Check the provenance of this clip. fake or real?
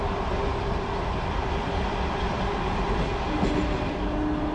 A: real